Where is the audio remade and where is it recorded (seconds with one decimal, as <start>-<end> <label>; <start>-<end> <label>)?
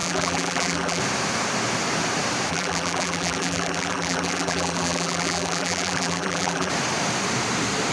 0.0-1.0 remade; 1.0-2.5 recorded; 2.5-6.7 remade; 6.7-7.9 recorded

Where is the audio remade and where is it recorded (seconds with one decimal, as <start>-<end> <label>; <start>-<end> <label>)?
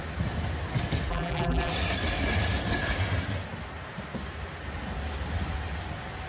0.0-1.1 recorded; 1.1-1.7 remade; 1.7-6.3 recorded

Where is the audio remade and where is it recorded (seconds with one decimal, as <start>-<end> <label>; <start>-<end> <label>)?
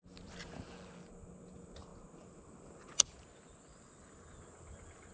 0.0-5.1 recorded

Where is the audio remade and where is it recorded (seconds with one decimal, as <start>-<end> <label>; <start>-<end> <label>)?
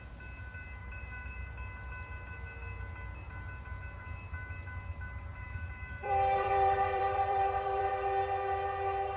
0.0-0.8 recorded; 0.8-1.5 remade; 1.5-5.3 recorded; 5.3-7.9 remade; 7.9-9.2 recorded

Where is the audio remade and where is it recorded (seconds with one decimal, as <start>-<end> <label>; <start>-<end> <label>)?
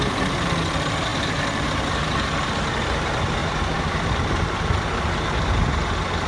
0.0-1.1 recorded; 1.1-2.7 remade; 2.7-3.4 recorded; 3.4-4.6 remade; 4.6-6.3 recorded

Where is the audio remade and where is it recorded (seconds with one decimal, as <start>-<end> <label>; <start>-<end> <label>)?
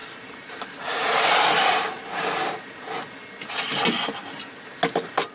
0.0-2.5 remade; 2.5-5.3 recorded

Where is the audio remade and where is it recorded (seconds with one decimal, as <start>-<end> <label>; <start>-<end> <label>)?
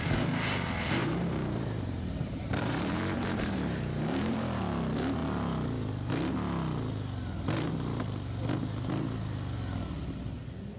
0.0-1.0 recorded; 1.0-4.6 remade; 4.6-10.8 recorded